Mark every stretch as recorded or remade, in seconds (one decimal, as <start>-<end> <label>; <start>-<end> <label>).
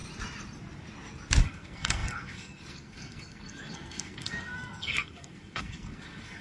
0.0-1.4 recorded; 1.4-6.4 remade